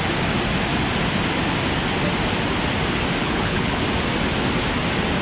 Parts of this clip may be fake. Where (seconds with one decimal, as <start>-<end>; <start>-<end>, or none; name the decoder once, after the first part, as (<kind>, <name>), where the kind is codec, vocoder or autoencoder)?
3.2-3.8 (codec, HILCodec)